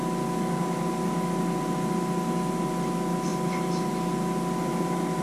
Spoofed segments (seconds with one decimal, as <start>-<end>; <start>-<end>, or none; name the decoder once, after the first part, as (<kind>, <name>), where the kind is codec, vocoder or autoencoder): none